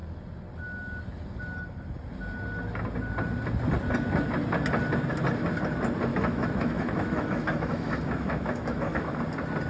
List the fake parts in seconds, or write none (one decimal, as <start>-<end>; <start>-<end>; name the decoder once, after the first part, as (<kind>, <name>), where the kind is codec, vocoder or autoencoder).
6.1-9.2 (autoencoder, DAC-VAE)